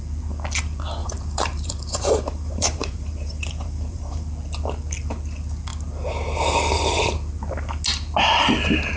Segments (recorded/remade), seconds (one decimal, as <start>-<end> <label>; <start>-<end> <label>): 0.0-1.0 recorded; 1.0-4.3 remade; 4.3-9.0 recorded